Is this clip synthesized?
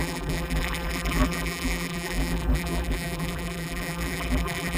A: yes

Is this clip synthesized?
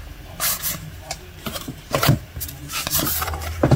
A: yes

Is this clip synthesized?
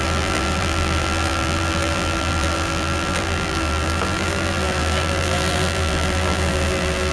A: yes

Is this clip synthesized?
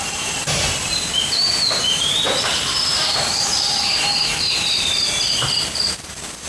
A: yes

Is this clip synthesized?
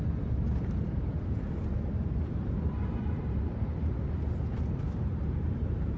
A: yes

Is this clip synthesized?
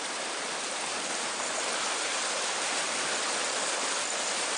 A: no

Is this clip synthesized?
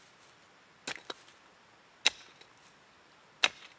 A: no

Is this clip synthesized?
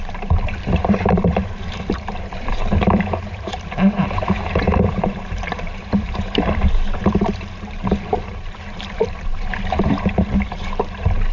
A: yes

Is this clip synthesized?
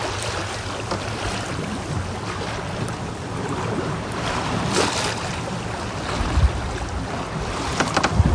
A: no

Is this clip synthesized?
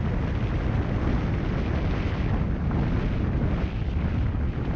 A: no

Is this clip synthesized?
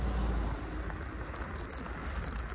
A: no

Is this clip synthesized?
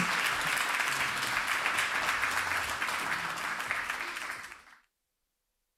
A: no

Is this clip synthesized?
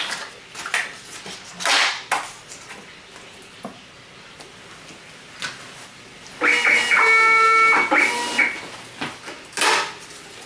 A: no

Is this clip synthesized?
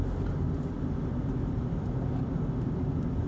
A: no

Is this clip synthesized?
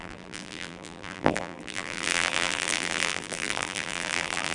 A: yes